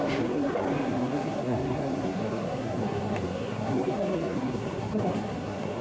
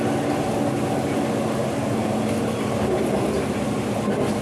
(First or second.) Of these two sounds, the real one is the second